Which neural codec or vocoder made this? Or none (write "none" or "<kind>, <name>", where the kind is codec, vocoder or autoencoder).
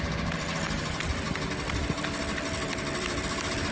vocoder, BigVGAN v2